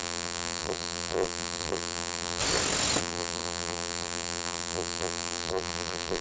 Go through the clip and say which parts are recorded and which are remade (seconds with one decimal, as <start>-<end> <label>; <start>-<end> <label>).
0.0-2.4 remade; 2.4-3.0 recorded; 3.0-6.2 remade